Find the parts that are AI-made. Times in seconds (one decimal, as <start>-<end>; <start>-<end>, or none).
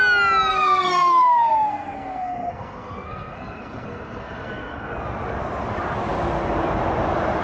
0.5-4.9